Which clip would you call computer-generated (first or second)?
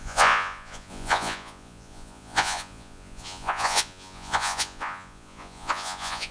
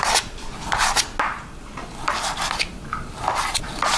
first